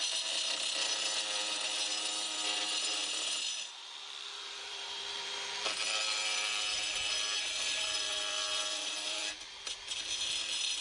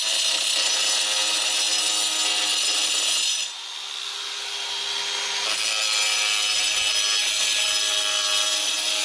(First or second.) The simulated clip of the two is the first